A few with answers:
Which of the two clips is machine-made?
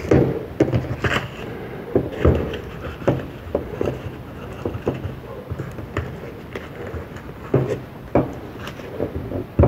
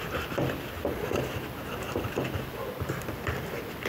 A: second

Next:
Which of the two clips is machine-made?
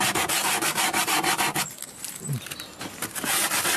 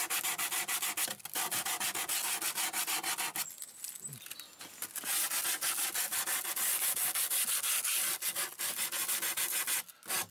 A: first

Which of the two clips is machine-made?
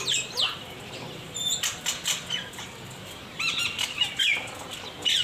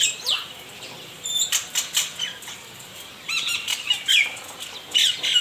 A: second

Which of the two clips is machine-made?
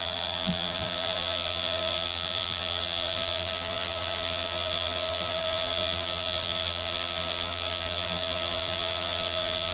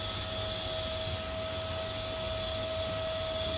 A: first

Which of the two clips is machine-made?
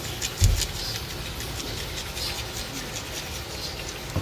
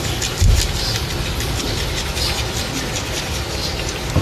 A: second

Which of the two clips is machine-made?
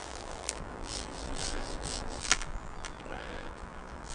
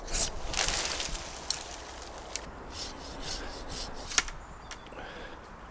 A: first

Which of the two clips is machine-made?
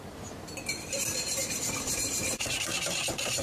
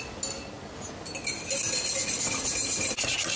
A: first